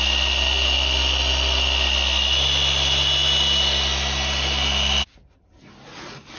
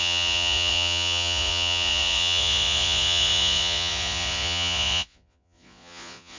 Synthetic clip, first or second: second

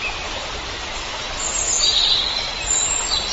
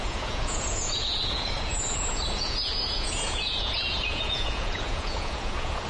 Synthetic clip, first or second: second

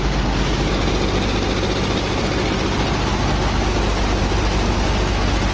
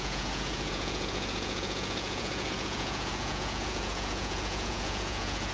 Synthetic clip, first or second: second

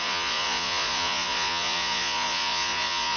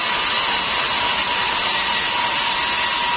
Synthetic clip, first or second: first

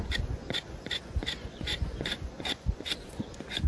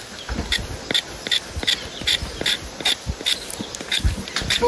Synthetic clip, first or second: first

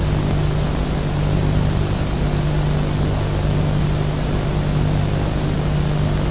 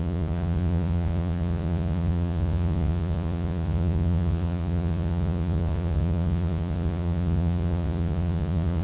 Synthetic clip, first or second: second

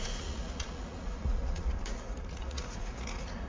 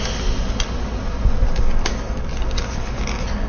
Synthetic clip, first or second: first